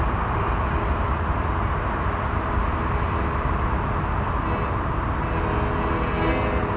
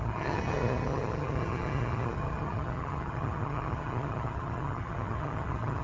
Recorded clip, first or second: first